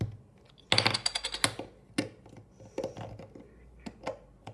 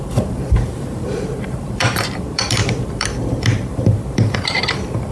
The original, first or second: first